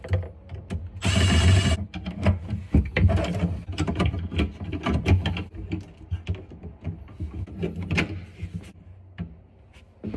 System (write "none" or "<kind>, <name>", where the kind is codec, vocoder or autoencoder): none